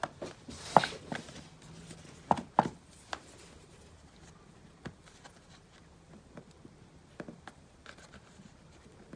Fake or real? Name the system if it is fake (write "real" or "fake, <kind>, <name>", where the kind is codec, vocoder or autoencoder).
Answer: real